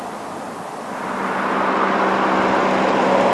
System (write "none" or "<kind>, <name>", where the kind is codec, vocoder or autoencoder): none